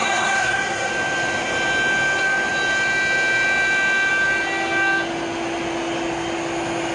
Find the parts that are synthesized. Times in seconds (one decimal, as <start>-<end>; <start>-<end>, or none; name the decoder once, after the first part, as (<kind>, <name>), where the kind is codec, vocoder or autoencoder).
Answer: 0.0-0.9 (codec, SNAC)